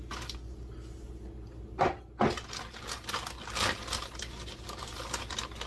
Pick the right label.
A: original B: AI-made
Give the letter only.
A